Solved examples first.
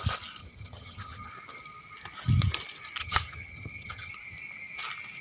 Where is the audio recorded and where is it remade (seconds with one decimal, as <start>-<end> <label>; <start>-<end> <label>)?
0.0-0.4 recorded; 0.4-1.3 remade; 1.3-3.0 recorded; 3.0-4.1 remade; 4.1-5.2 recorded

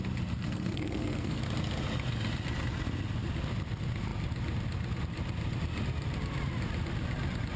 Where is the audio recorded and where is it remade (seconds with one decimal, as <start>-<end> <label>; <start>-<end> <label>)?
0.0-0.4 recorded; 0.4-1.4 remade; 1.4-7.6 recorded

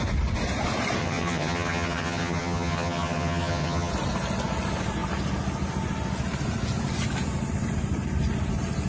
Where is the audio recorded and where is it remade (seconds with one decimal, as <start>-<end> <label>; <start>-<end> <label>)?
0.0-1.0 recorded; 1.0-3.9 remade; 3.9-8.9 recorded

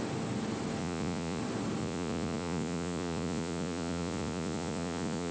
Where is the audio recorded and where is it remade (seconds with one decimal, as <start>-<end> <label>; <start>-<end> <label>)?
0.0-0.8 recorded; 0.8-1.4 remade; 1.4-1.8 recorded; 1.8-5.3 remade

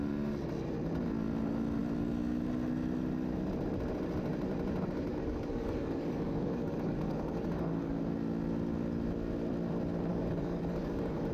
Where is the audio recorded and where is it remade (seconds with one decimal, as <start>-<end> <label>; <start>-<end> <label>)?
0.0-5.1 recorded; 5.1-8.0 remade; 8.0-10.1 recorded; 10.1-11.3 remade

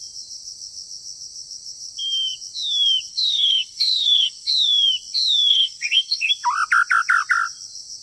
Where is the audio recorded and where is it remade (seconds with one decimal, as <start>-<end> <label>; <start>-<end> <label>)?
0.0-3.1 recorded; 3.1-4.5 remade; 4.5-5.5 recorded; 5.5-6.3 remade; 6.3-8.0 recorded

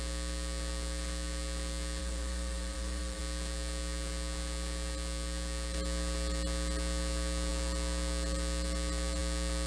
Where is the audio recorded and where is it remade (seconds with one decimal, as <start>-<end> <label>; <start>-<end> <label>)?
0.0-2.0 recorded; 2.0-3.2 remade; 3.2-9.7 recorded